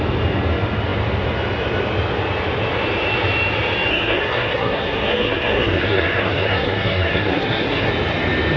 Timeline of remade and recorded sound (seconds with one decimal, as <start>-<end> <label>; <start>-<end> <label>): 0.0-3.9 recorded; 3.9-7.9 remade; 7.9-8.6 recorded